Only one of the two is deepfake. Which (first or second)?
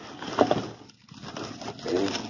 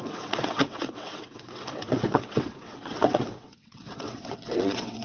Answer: second